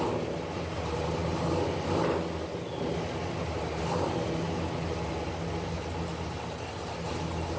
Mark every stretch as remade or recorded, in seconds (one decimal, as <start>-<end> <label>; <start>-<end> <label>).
0.0-7.6 recorded